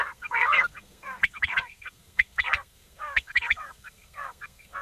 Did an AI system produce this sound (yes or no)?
yes